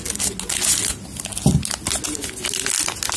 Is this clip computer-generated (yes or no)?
no